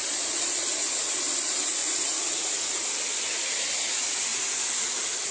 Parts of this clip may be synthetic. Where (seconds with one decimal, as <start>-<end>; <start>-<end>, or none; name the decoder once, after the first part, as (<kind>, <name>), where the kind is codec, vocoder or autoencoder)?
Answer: 0.0-0.6 (vocoder, Vocos)